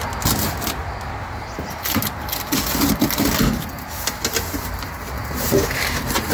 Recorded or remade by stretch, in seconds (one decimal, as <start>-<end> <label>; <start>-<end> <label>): 0.0-6.3 recorded